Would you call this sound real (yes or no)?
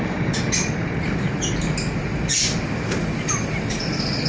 yes